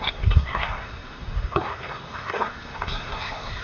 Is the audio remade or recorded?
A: remade